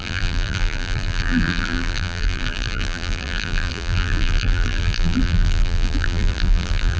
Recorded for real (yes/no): no